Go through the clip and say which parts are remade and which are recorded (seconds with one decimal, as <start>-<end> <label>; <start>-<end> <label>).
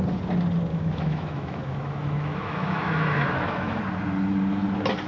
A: 0.0-0.7 recorded; 0.7-3.8 remade; 3.8-5.1 recorded